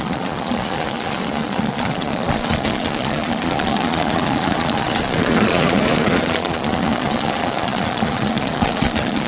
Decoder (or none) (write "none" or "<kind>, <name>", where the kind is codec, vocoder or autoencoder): vocoder, Vocos